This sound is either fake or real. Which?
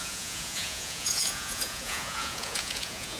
fake